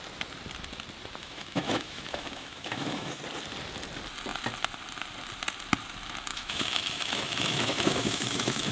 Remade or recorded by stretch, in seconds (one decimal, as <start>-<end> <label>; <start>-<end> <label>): 0.0-1.2 recorded; 1.2-3.2 remade; 3.2-6.3 recorded; 6.3-8.7 remade